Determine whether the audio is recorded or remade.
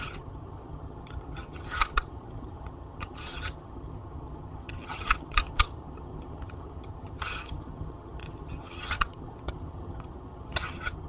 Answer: remade